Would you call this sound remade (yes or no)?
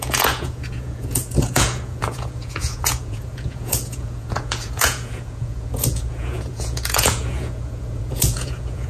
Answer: yes